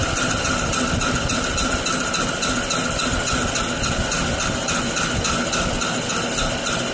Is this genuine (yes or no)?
yes